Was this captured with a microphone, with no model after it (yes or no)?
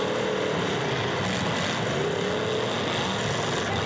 yes